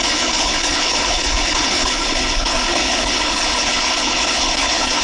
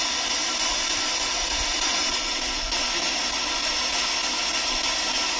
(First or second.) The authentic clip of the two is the second